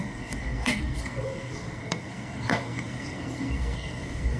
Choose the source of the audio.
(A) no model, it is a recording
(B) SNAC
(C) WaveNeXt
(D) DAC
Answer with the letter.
B